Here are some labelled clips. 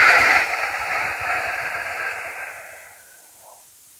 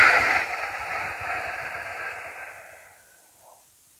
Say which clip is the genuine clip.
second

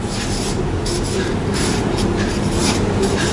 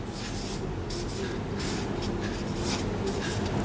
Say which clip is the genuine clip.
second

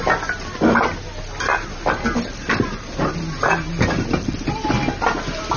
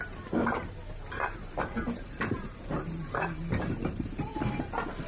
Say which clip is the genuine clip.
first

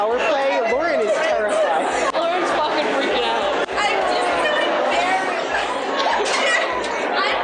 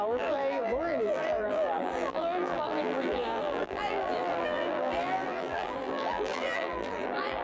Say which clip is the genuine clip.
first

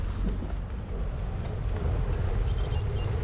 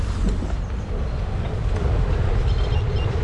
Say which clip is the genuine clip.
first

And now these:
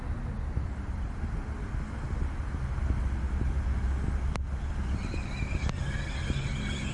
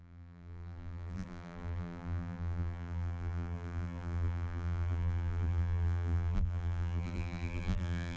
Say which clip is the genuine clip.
first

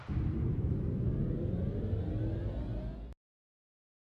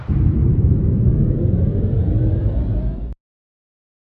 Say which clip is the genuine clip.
first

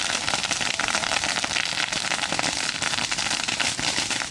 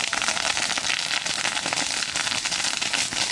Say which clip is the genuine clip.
second